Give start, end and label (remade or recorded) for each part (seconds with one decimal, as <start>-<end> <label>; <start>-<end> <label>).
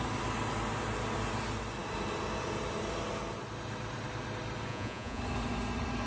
0.0-4.7 recorded; 4.7-5.2 remade; 5.2-6.1 recorded